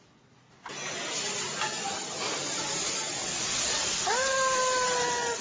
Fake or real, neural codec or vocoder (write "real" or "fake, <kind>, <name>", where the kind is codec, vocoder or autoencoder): real